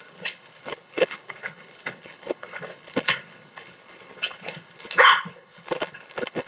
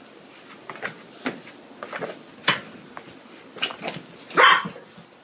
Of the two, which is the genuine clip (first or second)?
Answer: second